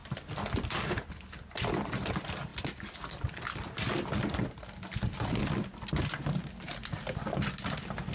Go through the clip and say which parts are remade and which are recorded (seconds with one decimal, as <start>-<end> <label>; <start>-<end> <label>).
0.0-8.1 recorded